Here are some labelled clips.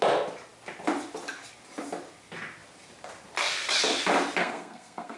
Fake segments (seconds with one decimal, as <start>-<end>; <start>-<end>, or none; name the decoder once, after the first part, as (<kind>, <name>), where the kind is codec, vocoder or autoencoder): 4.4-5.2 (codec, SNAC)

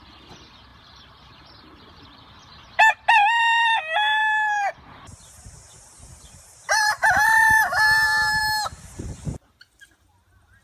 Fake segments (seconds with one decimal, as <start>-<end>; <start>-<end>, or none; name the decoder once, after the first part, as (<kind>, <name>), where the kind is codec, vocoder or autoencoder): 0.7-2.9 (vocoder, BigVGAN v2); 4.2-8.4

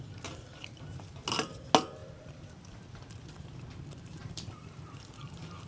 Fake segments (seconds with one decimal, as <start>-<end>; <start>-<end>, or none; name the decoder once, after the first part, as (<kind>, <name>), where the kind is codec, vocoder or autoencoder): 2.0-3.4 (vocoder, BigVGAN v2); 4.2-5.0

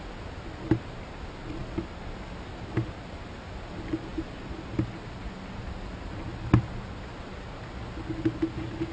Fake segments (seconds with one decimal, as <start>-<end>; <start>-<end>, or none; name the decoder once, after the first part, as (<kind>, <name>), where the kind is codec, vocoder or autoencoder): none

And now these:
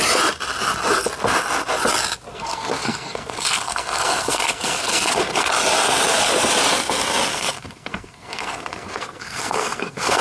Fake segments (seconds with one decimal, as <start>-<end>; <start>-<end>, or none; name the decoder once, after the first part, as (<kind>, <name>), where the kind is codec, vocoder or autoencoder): 2.3-5.5 (codec, SNAC); 7.3-10.2

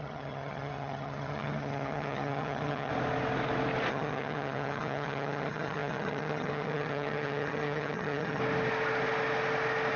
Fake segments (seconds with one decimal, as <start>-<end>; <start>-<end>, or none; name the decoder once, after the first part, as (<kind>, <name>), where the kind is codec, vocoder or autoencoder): 0.0-2.9 (vocoder, HiFi-GAN); 3.9-8.4